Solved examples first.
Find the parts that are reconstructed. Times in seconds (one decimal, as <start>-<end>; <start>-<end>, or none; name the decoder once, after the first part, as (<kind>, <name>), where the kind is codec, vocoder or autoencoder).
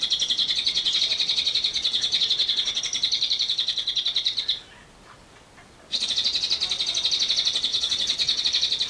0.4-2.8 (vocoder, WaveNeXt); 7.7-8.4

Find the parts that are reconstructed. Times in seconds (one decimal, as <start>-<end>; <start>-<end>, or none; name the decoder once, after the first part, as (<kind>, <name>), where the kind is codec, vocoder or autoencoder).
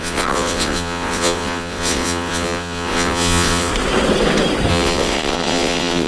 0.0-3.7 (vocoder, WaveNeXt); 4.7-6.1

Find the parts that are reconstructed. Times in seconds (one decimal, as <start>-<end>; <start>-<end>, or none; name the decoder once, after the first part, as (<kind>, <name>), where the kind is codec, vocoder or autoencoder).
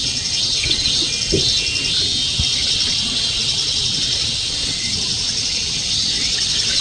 0.0-1.1 (vocoder, WaveNeXt); 2.6-6.8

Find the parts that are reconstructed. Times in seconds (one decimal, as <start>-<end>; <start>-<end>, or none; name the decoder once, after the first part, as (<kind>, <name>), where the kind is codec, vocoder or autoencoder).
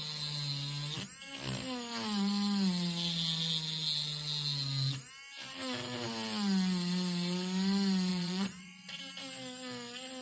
8.1-9.0 (vocoder, WaveNeXt)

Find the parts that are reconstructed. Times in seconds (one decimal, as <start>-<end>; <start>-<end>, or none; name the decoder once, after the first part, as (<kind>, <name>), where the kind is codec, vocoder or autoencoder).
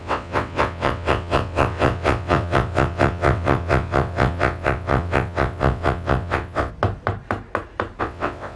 0.0-6.7 (vocoder, WaveNeXt); 8.0-8.6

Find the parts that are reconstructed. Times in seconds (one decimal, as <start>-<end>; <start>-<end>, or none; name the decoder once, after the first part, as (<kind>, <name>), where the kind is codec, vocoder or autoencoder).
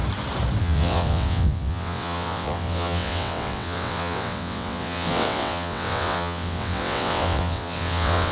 0.6-8.3 (vocoder, WaveNeXt)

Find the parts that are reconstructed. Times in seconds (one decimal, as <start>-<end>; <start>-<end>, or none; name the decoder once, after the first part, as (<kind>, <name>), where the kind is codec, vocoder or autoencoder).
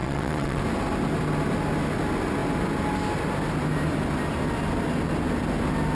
0.0-0.6 (vocoder, WaveNeXt)